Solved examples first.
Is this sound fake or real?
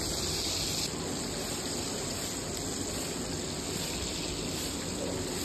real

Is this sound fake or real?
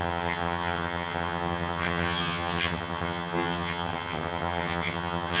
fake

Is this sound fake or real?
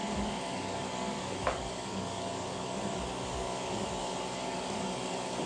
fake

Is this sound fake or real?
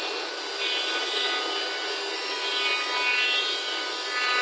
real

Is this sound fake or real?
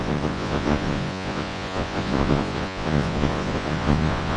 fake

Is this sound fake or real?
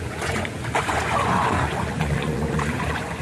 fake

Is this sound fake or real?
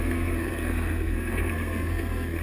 fake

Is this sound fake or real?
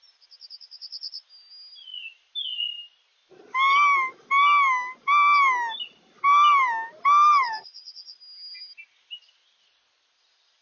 real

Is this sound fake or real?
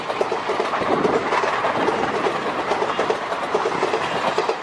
real